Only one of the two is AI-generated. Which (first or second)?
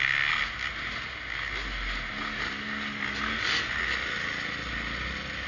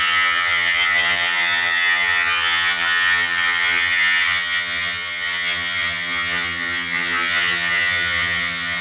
second